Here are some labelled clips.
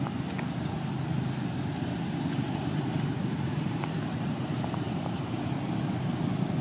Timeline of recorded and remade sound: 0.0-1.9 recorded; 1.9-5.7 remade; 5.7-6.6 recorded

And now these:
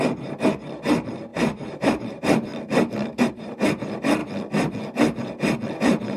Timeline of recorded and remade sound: 0.0-2.5 remade; 2.5-3.3 recorded; 3.3-4.2 remade; 4.2-5.8 recorded; 5.8-6.2 remade

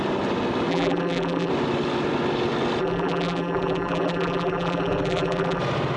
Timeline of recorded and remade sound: 0.0-0.7 recorded; 0.7-1.5 remade; 1.5-2.8 recorded; 2.8-5.6 remade; 5.6-6.0 recorded

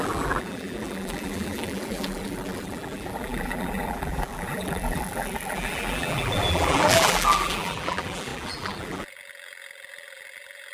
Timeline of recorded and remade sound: 0.0-10.7 remade

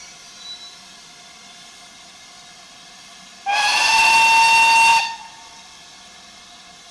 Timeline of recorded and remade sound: 0.0-4.9 recorded; 4.9-6.4 remade; 6.4-6.9 recorded

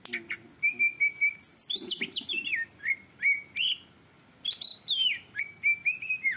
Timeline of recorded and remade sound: 0.0-4.7 recorded; 4.7-5.4 remade; 5.4-6.4 recorded

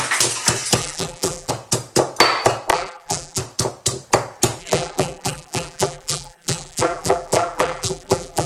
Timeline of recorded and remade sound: 0.0-0.8 recorded; 0.8-1.5 remade; 1.5-2.7 recorded; 2.7-3.4 remade; 3.4-4.6 recorded; 4.6-8.5 remade